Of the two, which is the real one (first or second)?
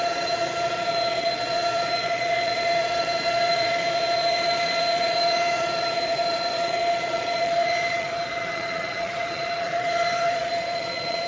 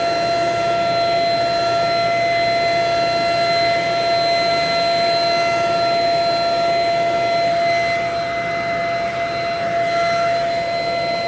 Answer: second